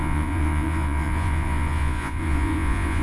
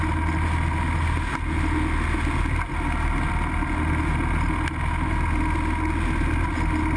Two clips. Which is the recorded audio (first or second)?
second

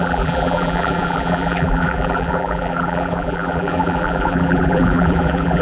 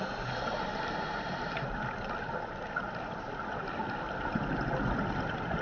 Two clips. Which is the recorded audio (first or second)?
second